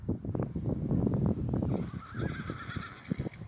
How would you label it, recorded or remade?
remade